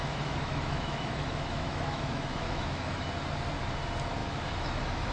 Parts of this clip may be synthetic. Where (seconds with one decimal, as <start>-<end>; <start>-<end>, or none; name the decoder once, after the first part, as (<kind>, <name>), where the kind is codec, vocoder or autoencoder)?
0.0-3.1 (autoencoder, DAC-VAE); 4.2-5.1